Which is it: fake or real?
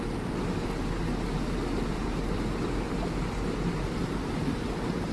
real